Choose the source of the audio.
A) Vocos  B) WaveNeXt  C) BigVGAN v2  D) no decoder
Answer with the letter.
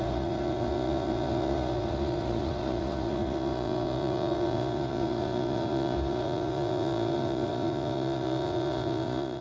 A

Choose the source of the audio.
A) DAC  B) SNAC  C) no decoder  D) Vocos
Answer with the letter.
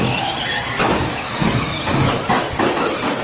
C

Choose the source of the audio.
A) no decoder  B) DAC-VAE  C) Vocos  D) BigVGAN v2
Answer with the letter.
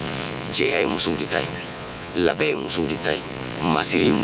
C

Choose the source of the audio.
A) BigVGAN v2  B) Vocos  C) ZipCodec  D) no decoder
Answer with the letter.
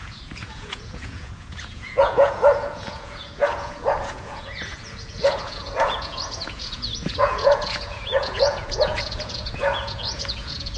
B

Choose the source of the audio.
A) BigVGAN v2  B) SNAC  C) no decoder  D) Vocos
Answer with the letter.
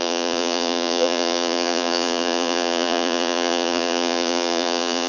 D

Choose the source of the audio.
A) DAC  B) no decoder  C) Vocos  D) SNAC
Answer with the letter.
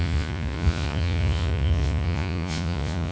C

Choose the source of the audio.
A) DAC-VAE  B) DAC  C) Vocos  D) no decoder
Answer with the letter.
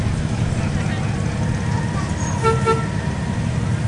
D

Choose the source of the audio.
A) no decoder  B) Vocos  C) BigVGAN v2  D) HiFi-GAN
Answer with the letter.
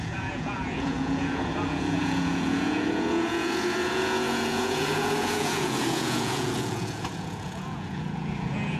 B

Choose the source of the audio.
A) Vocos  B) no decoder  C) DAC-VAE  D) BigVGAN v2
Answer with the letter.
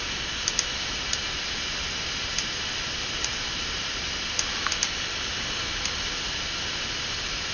B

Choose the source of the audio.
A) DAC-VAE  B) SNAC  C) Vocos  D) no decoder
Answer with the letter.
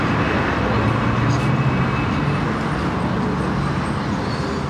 D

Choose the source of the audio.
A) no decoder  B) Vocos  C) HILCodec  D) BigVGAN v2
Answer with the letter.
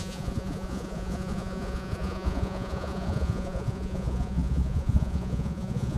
B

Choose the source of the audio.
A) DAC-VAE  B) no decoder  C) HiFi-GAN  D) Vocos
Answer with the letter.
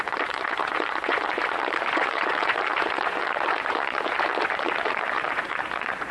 D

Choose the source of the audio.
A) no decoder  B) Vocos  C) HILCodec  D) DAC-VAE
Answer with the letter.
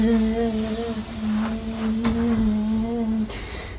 A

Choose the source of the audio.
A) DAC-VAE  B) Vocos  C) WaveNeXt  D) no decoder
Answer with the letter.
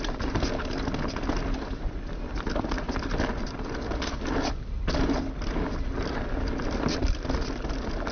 D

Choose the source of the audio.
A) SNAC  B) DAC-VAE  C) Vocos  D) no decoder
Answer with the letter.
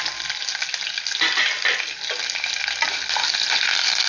D